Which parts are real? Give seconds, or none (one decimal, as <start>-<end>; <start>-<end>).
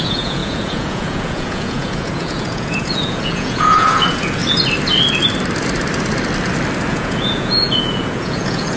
4.4-6.9